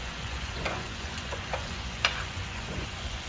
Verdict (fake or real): fake